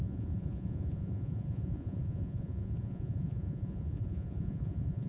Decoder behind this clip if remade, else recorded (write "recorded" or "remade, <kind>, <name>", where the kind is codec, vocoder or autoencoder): remade, vocoder, Vocos